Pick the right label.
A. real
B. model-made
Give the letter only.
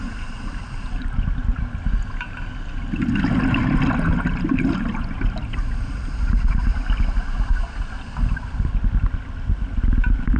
A